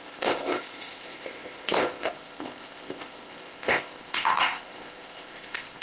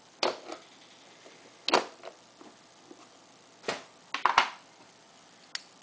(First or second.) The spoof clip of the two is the first